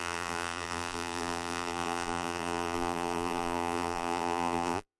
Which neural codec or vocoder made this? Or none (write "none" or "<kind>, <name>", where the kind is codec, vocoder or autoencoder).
vocoder, BigVGAN v2